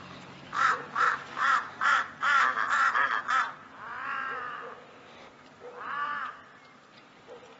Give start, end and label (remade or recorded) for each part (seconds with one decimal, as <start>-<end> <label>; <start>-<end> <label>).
0.0-0.5 recorded; 0.5-3.1 remade; 3.1-6.2 recorded; 6.2-7.6 remade